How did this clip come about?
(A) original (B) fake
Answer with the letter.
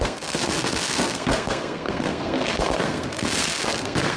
B